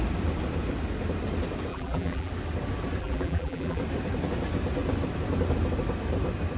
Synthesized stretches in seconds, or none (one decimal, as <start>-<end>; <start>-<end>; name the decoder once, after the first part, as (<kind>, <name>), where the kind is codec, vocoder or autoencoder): 1.7-2.3 (vocoder, BigVGAN v2); 3.0-3.8